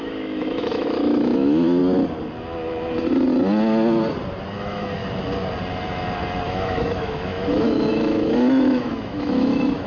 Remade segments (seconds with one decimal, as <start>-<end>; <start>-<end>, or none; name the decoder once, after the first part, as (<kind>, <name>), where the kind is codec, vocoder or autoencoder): 0.0-1.8 (autoencoder, DAC-VAE); 4.6-5.0; 6.4-9.9